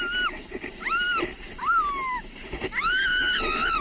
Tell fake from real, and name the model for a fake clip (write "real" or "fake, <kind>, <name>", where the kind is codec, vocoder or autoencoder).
real